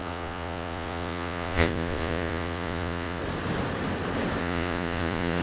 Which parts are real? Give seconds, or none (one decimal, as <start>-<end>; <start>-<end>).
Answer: 3.2-4.4